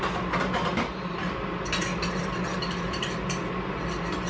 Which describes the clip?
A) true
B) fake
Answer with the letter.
A